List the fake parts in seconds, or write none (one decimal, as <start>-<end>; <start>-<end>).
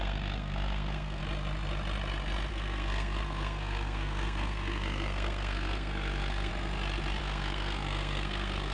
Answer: 0.0-1.2; 2.5-6.5; 7.2-8.7